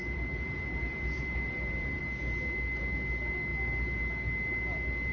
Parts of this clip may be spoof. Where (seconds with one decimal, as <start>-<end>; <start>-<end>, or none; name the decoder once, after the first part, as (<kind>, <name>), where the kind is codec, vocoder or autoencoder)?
0.0-2.0 (vocoder, BigVGAN v2)